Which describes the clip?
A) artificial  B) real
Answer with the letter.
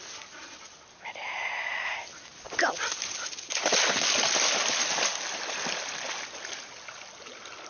B